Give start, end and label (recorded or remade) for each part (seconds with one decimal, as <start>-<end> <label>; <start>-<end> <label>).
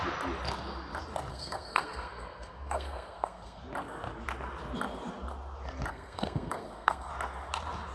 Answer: 0.0-1.3 recorded; 1.3-3.6 remade; 3.6-5.9 recorded; 5.9-7.1 remade; 7.1-7.9 recorded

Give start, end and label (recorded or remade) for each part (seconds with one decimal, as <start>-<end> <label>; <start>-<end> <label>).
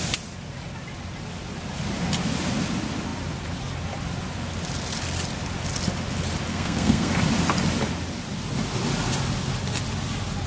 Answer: 0.0-6.5 recorded; 6.5-7.1 remade; 7.1-10.5 recorded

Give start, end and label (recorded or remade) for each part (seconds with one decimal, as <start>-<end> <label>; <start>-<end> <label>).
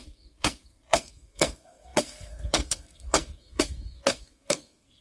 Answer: 0.0-5.0 remade